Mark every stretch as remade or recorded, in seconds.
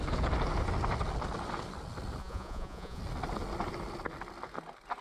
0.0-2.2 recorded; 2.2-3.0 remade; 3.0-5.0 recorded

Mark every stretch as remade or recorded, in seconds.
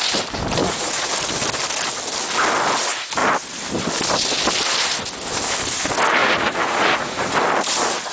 0.0-0.6 recorded; 0.6-1.1 remade; 1.1-6.2 recorded; 6.2-7.2 remade; 7.2-8.1 recorded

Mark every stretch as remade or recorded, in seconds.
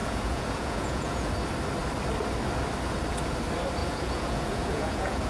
0.0-1.3 remade; 1.3-3.8 recorded; 3.8-5.3 remade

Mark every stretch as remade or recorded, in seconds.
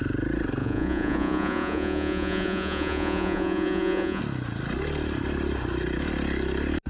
0.0-0.6 recorded; 0.6-4.2 remade; 4.2-6.9 recorded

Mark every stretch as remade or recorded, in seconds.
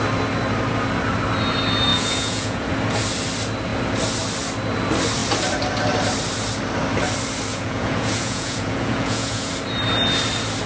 0.0-1.9 recorded; 1.9-2.7 remade; 2.7-7.5 recorded; 7.5-9.5 remade; 9.5-10.7 recorded